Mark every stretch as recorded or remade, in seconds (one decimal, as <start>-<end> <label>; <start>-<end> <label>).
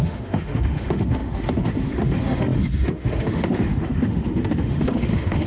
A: 0.0-5.5 remade